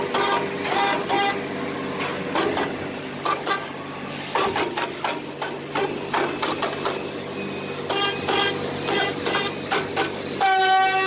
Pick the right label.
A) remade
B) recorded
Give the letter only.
B